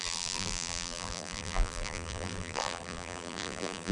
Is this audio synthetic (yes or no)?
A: yes